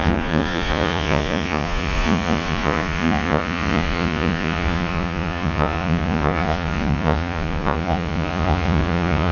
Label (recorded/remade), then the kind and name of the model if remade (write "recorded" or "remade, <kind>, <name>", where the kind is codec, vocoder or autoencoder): remade, vocoder, Vocos